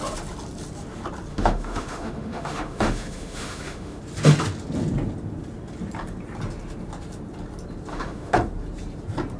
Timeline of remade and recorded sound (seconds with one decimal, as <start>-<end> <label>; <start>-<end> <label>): 0.0-1.3 recorded; 1.3-4.0 remade; 4.0-7.9 recorded; 7.9-8.4 remade; 8.4-9.4 recorded

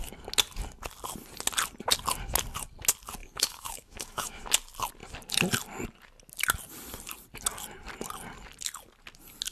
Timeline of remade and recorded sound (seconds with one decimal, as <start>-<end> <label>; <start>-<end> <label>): 0.0-3.2 recorded; 3.2-4.4 remade; 4.4-9.5 recorded

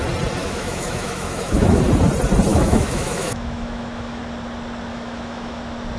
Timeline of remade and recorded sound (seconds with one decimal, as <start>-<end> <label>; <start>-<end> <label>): 0.0-0.4 recorded; 0.4-1.8 remade; 1.8-2.5 recorded; 2.5-4.2 remade; 4.2-4.9 recorded; 4.9-5.6 remade; 5.6-6.0 recorded

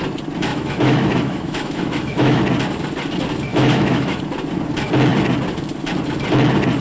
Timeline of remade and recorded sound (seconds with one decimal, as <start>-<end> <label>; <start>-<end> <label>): 0.0-0.5 recorded; 0.5-2.4 remade; 2.4-3.5 recorded; 3.5-4.2 remade; 4.2-6.8 recorded